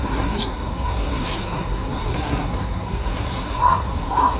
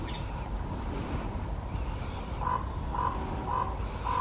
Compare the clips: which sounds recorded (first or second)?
second